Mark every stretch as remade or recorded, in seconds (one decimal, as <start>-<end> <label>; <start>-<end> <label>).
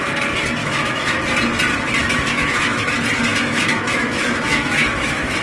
0.0-0.6 recorded; 0.6-1.2 remade; 1.2-2.0 recorded; 2.0-2.9 remade; 2.9-3.3 recorded; 3.3-5.4 remade